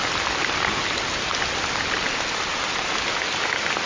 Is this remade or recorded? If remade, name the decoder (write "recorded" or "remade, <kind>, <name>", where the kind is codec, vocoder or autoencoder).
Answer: recorded